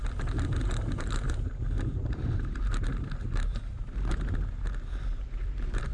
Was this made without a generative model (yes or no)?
no